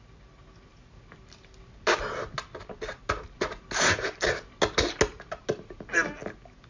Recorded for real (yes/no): yes